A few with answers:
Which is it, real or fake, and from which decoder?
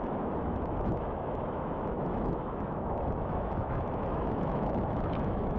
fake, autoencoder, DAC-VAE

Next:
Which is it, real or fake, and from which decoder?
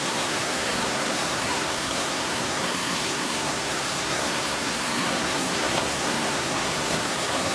fake, codec, SNAC